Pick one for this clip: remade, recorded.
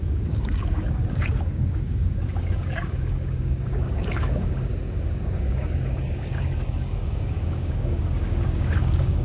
remade